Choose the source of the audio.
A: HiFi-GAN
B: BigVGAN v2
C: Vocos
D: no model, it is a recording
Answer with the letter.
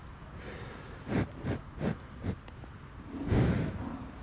D